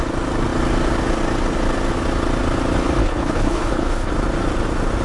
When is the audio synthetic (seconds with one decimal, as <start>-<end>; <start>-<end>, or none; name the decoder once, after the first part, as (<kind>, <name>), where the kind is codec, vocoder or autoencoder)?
3.0-4.1 (codec, HILCodec)